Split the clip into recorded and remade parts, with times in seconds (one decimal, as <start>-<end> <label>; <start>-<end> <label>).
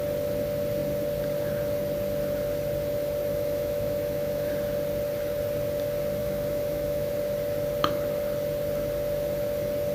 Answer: 0.0-3.3 recorded; 3.3-4.5 remade; 4.5-6.2 recorded; 6.2-7.1 remade; 7.1-9.9 recorded